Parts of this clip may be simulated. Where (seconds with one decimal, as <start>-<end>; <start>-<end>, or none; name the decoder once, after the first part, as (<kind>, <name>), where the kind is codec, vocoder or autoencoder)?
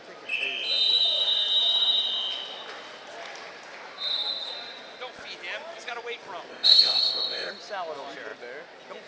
6.5-7.5 (codec, ZipCodec)